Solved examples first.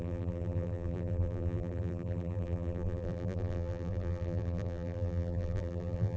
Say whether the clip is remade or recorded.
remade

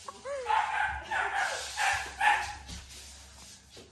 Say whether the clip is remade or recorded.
recorded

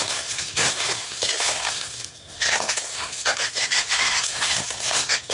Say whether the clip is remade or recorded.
remade